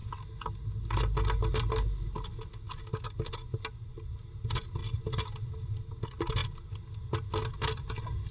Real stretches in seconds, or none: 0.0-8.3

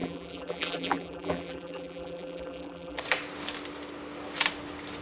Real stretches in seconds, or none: 3.0-5.0

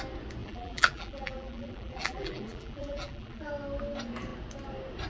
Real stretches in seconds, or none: 0.0-0.4; 3.5-5.1

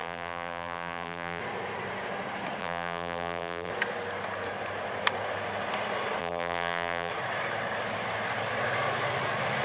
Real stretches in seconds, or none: 1.4-2.6; 3.7-6.2; 7.1-9.6